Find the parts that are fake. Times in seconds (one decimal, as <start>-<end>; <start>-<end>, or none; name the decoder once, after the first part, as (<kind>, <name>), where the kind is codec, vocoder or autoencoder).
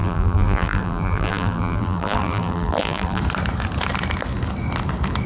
0.0-3.2 (vocoder, BigVGAN v2)